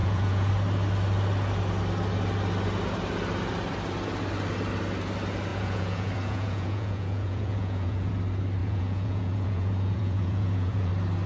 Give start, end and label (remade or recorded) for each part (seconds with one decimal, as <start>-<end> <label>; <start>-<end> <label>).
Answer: 0.0-0.5 remade; 0.5-5.5 recorded; 5.5-8.1 remade; 8.1-8.6 recorded; 8.6-10.9 remade; 10.9-11.3 recorded